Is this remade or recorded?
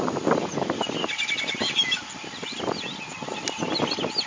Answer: recorded